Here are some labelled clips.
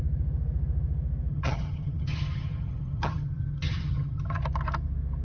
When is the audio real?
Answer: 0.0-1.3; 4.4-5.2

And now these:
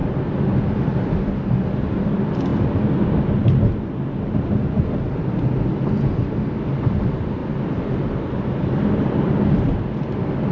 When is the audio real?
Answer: 0.0-1.4; 2.5-5.7

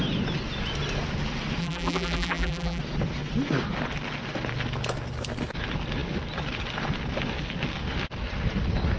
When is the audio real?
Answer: 0.0-1.6; 2.8-9.0

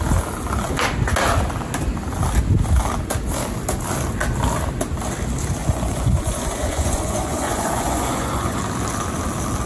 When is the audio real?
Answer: 0.0-5.6; 8.6-9.7

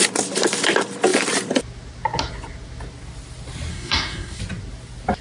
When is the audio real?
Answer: 0.0-3.7; 4.4-5.2